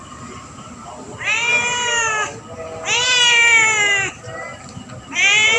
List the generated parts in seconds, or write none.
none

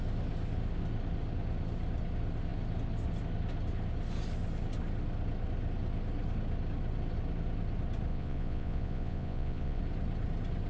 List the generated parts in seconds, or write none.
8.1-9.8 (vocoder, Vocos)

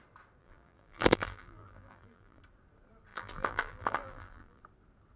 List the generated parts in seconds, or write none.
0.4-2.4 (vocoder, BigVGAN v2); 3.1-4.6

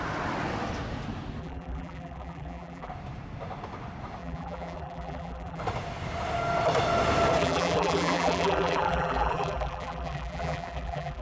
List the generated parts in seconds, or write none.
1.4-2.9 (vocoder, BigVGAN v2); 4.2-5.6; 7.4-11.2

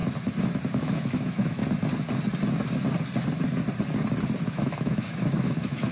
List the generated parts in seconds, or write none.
0.7-1.6 (autoencoder, DAC-VAE); 4.5-5.9